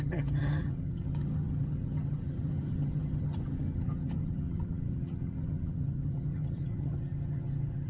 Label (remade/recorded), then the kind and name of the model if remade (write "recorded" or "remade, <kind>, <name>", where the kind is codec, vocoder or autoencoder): remade, vocoder, HiFi-GAN